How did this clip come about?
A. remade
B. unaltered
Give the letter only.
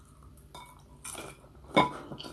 B